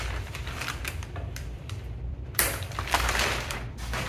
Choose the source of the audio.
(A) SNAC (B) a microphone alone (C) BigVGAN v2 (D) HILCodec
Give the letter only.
C